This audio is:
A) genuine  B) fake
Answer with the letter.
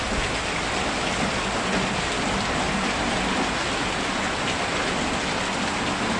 A